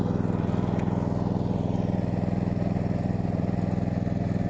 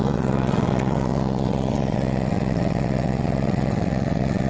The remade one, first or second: second